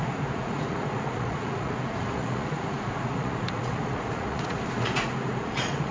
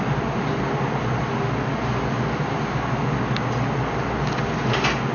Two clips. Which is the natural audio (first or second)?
second